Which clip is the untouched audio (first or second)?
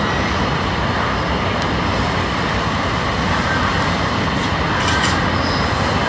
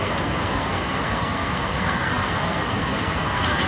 first